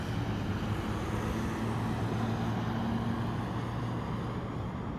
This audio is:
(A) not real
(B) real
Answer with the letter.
B